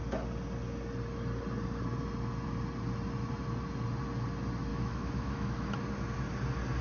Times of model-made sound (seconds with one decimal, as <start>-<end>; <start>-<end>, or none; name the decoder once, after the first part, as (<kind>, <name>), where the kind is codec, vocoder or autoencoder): 4.7-5.8 (autoencoder, DAC-VAE)